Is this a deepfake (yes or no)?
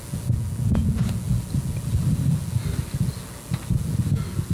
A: no